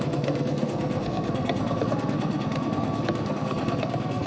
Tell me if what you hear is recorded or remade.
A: remade